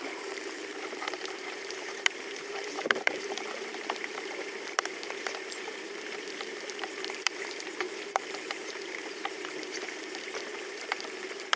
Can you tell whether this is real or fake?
fake